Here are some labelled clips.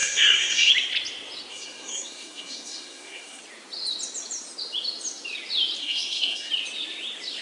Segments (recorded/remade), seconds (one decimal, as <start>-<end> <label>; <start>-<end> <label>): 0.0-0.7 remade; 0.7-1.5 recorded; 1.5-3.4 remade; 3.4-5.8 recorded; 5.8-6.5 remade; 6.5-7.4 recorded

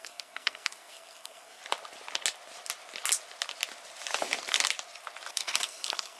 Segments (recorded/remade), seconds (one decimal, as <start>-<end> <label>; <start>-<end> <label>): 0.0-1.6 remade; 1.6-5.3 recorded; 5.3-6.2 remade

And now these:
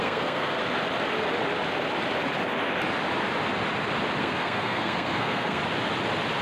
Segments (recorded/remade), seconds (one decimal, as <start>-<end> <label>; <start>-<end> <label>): 0.0-0.6 remade; 0.6-4.2 recorded; 4.2-5.6 remade; 5.6-6.4 recorded

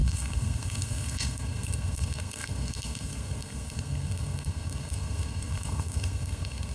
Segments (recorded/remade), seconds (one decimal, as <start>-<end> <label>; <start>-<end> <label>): 0.0-6.7 remade

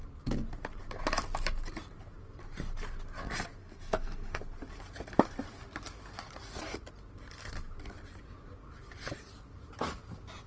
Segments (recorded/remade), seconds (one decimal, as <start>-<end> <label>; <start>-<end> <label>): 0.0-3.6 recorded; 3.6-4.4 remade; 4.4-10.5 recorded

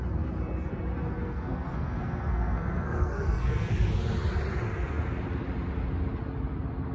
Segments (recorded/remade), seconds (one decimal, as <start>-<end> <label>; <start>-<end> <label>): 0.0-1.1 recorded; 1.1-3.7 remade; 3.7-6.9 recorded

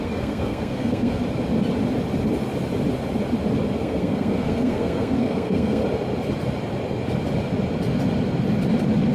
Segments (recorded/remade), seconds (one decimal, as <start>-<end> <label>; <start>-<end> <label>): 0.0-1.2 remade; 1.2-3.8 recorded; 3.8-5.8 remade; 5.8-9.1 recorded